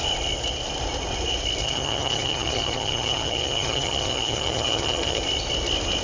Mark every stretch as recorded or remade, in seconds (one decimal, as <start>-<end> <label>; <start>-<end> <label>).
0.0-1.6 recorded; 1.6-5.2 remade; 5.2-6.0 recorded